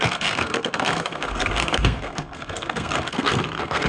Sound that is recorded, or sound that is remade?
remade